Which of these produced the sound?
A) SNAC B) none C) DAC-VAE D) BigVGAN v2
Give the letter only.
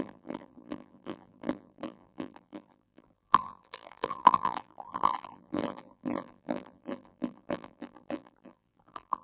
D